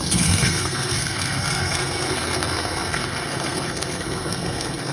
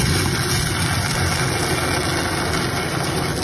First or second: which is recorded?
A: second